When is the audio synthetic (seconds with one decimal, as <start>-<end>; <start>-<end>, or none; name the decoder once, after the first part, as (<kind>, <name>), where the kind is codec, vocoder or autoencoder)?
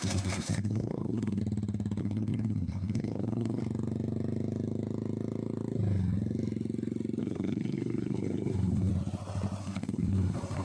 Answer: 0.0-1.4 (codec, SNAC); 2.0-3.6; 7.2-8.9; 9.6-10.6